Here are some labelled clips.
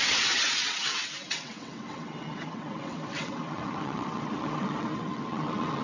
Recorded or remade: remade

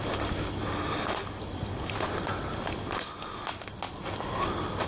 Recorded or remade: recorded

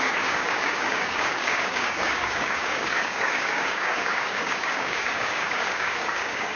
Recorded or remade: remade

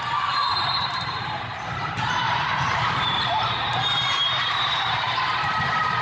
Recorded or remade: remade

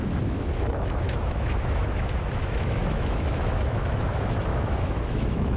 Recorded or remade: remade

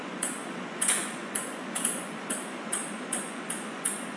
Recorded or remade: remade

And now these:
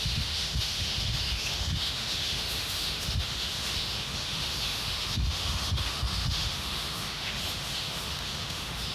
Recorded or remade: remade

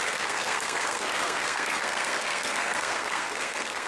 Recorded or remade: remade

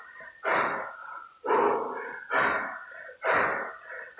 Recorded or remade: recorded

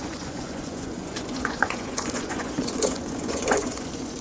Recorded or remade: remade